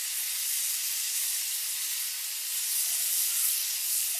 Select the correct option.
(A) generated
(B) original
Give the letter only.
B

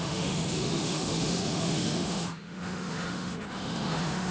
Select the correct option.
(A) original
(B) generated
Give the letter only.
B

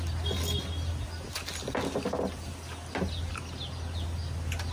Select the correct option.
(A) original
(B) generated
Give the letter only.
A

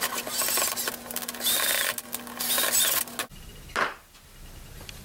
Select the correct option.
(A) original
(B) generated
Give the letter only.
A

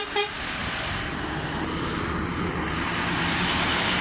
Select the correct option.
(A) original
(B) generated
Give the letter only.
A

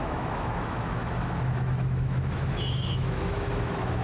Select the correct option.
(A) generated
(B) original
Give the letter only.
A